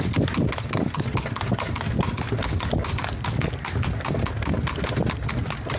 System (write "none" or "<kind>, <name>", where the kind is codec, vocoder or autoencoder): none